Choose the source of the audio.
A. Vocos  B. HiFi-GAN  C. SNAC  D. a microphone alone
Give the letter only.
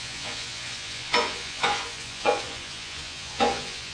A